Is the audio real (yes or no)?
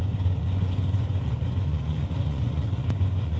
no